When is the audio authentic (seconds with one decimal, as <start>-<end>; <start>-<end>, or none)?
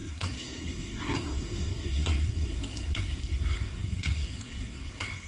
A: none